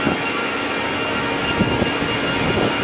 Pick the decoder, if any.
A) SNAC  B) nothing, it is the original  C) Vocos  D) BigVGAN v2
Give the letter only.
B